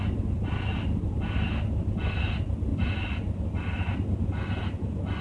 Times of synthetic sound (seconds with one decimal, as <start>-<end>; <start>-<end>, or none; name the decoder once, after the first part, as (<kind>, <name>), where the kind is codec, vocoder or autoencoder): none